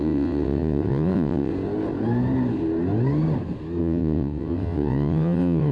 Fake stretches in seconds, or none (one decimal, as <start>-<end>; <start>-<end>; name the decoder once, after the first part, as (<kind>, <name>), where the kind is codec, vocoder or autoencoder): 0.0-1.5 (vocoder, WaveNeXt); 3.8-5.7